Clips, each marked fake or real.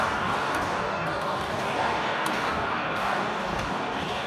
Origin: fake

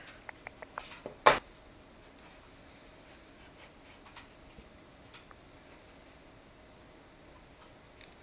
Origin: real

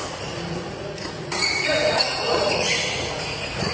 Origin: fake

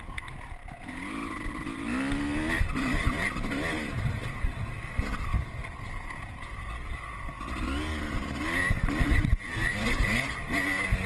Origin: real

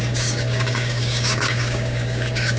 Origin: fake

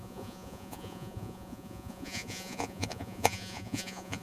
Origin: fake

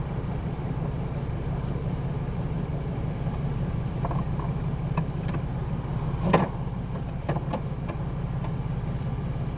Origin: fake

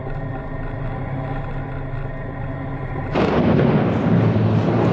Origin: real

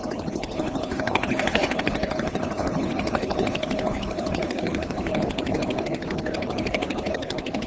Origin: fake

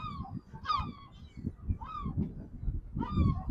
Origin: real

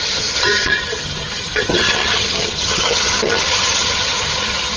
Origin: fake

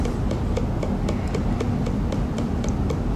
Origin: fake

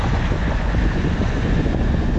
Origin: fake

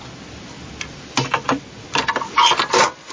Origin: real